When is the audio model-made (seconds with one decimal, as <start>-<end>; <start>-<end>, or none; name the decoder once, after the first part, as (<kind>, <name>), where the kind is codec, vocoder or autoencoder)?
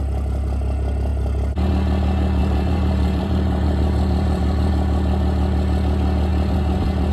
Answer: 2.4-4.7 (vocoder, BigVGAN v2)